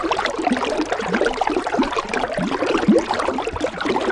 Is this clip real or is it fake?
fake